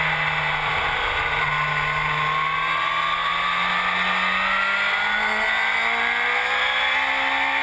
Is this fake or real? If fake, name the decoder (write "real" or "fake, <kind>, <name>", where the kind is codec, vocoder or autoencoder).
real